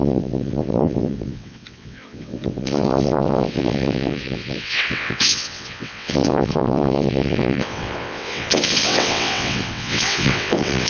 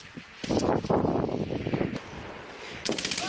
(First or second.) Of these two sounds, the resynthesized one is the first